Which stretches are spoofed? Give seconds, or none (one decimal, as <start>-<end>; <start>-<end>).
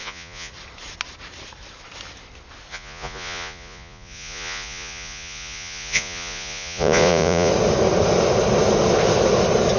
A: 0.0-0.5; 2.7-7.5